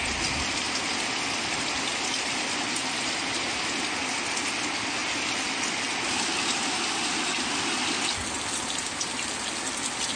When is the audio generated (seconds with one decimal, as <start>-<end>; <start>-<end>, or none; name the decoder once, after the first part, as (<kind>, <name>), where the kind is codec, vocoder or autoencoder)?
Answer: none